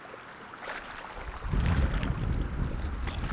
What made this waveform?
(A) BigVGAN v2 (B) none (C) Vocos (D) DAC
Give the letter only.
B